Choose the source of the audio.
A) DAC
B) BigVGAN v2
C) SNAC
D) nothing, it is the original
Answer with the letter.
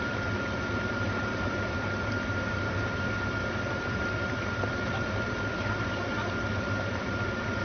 B